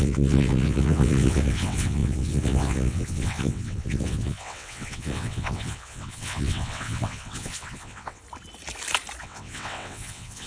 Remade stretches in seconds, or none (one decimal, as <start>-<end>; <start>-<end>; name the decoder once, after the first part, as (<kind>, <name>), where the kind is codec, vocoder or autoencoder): 0.0-8.2 (vocoder, WaveNeXt); 9.2-10.5